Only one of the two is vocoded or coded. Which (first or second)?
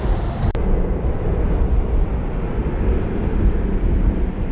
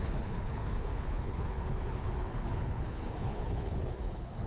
second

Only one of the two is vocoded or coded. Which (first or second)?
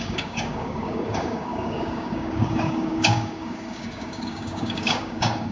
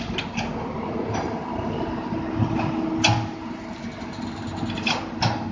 first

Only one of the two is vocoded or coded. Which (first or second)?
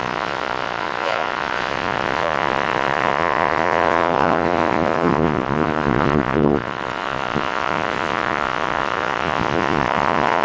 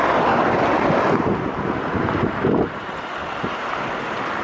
first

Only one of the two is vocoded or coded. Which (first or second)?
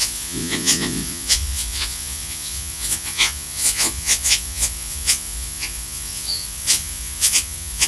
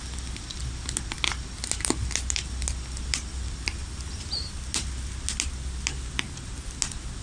first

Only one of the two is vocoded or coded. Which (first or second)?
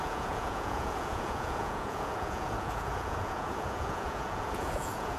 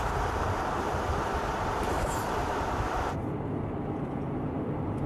first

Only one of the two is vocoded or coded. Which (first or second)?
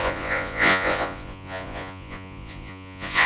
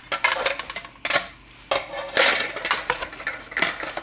first